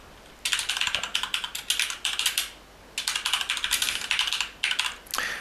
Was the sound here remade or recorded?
recorded